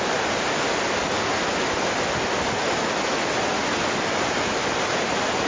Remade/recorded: recorded